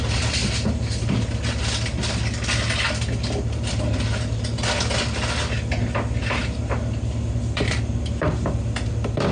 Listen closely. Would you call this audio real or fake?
real